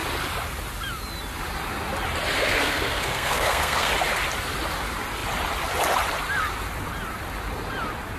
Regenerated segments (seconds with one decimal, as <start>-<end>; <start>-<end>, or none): 2.4-3.9